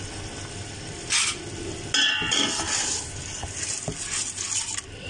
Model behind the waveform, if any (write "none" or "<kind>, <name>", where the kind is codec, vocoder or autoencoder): none